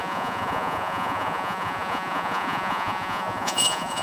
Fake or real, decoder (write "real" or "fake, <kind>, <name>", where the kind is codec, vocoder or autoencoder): fake, vocoder, Vocos